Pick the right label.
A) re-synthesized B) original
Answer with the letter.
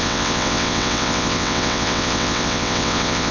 A